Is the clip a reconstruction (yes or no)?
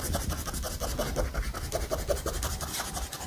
no